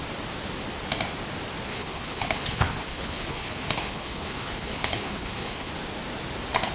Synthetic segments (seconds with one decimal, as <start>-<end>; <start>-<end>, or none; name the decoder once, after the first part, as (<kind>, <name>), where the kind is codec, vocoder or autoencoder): 1.7-5.7 (codec, HILCodec)